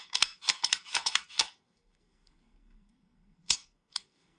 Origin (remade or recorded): remade